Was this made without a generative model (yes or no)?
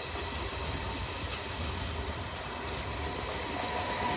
yes